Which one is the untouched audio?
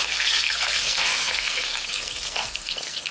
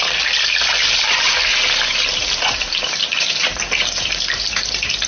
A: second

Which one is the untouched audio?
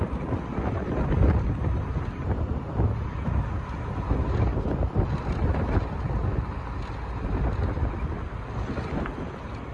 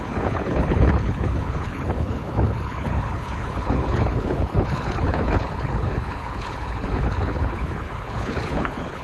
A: first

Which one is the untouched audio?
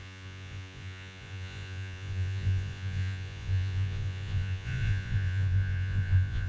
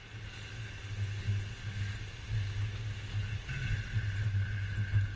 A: second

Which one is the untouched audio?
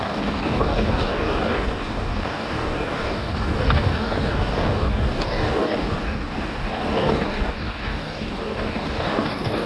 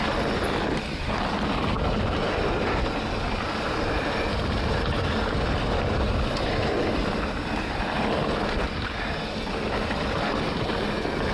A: second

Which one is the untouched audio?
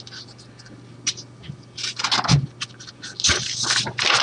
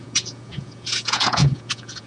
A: first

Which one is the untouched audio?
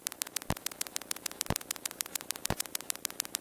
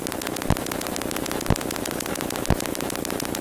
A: second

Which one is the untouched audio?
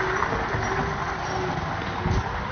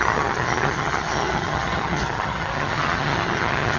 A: first